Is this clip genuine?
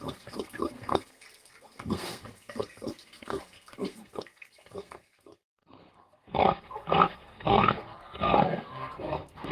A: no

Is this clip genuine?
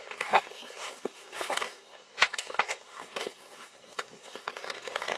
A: no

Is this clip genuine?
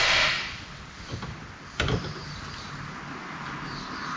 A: yes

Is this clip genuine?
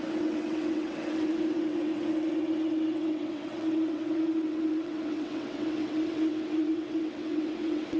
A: no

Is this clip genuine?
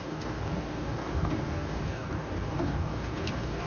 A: no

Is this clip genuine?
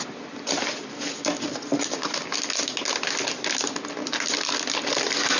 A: yes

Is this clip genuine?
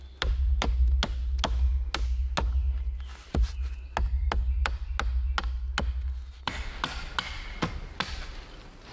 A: yes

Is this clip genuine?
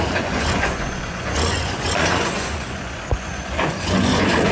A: no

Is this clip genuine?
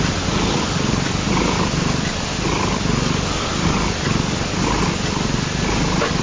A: yes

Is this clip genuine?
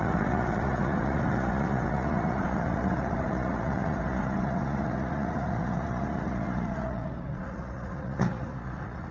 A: no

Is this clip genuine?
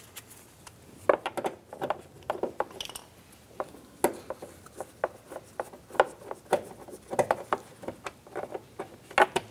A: yes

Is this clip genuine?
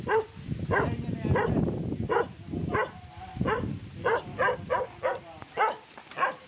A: no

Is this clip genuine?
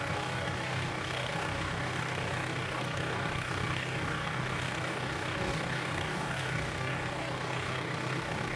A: no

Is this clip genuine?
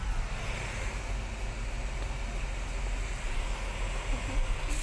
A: yes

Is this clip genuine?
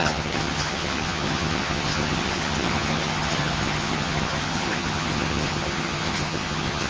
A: no